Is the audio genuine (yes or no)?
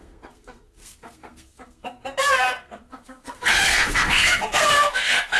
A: no